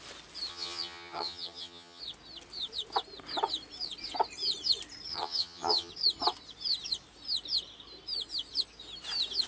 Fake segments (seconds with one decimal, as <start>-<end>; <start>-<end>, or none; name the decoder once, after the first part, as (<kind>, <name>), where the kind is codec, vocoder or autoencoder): 0.5-2.0 (vocoder, HiFi-GAN); 5.1-5.9